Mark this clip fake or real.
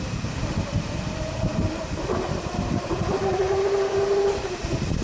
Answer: fake